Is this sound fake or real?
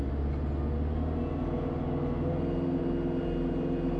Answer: real